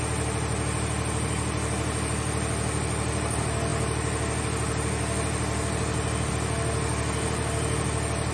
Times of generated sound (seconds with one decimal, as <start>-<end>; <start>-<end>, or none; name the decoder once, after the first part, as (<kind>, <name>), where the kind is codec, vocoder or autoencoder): none